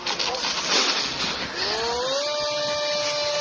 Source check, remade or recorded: recorded